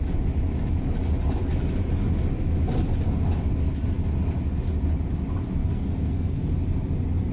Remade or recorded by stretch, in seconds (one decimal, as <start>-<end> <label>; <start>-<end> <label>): 0.0-5.6 recorded; 5.6-6.4 remade; 6.4-7.3 recorded